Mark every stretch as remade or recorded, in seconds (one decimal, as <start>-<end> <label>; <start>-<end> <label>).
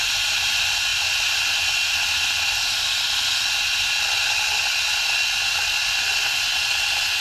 0.0-7.2 recorded